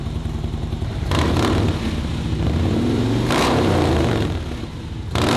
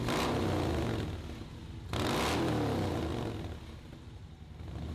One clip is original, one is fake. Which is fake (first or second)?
first